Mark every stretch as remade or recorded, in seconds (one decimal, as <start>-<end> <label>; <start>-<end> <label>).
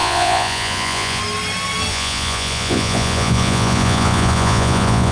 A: 0.0-1.2 remade; 1.2-1.9 recorded; 1.9-5.1 remade